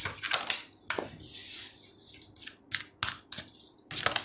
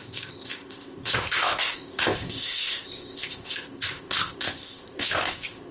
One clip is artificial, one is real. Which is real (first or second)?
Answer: first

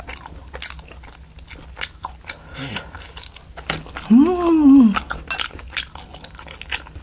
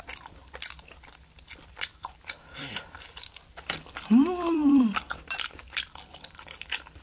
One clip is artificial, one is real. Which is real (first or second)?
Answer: first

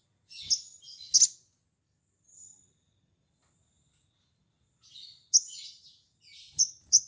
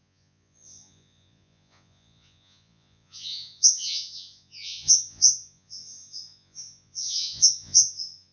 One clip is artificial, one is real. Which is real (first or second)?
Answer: first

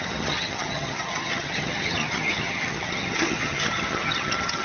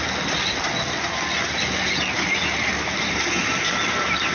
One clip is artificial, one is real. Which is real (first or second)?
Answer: second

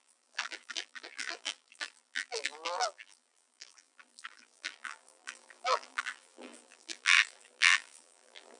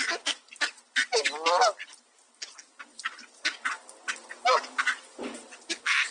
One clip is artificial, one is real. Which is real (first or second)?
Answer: second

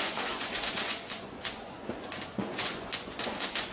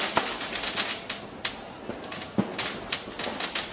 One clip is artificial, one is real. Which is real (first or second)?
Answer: second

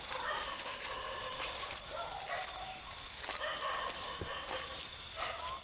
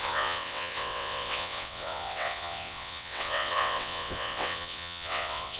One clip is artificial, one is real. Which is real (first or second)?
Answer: first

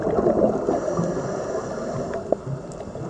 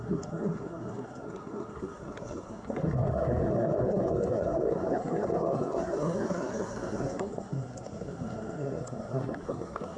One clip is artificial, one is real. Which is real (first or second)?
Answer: first